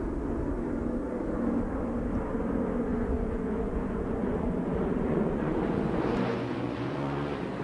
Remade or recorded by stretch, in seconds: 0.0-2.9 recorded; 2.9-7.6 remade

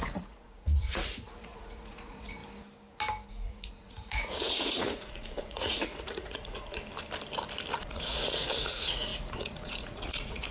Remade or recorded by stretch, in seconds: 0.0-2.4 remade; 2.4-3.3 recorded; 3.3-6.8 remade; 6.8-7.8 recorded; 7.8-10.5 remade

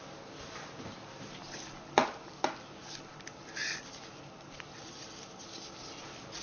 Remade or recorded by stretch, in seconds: 0.0-6.4 recorded

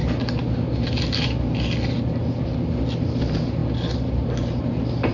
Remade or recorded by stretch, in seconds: 0.0-5.1 recorded